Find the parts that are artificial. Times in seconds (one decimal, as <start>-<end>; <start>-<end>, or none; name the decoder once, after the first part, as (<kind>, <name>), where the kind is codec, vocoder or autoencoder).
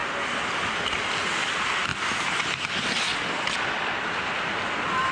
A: none